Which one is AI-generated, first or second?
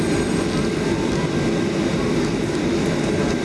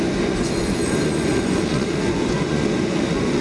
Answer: second